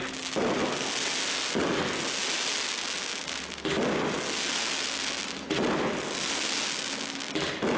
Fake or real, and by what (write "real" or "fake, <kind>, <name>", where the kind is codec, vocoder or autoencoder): real